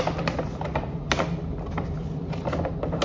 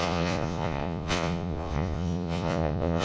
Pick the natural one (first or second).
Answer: first